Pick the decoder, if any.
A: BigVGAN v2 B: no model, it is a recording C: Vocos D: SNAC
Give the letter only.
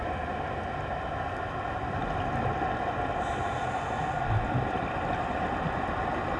B